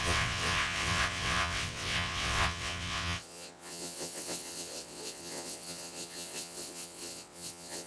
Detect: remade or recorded remade